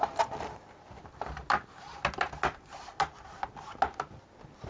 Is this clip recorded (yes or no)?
yes